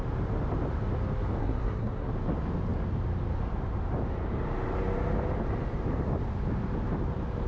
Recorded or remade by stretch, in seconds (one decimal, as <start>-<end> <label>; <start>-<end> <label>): 0.0-1.4 recorded; 1.4-2.1 remade; 2.1-7.5 recorded

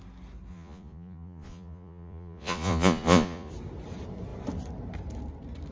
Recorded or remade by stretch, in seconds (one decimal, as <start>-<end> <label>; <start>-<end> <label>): 0.0-0.5 recorded; 0.5-3.5 remade; 3.5-5.7 recorded

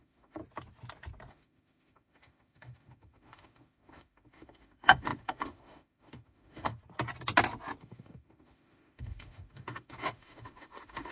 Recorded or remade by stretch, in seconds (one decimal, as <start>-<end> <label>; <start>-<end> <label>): 0.0-0.4 remade; 0.4-1.3 recorded; 1.3-6.8 remade; 6.8-7.8 recorded; 7.8-11.1 remade

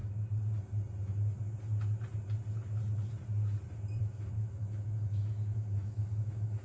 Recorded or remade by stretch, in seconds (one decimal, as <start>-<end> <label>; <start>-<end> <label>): 0.0-4.0 recorded; 4.0-6.6 remade

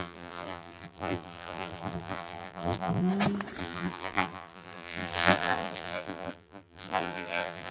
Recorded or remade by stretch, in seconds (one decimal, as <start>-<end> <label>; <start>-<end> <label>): 0.0-3.1 remade; 3.1-3.6 recorded; 3.6-7.7 remade

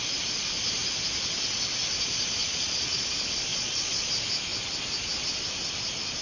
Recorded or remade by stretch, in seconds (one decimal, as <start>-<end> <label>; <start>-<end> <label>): 0.0-2.4 recorded; 2.4-3.1 remade; 3.1-3.5 recorded; 3.5-4.1 remade; 4.1-6.2 recorded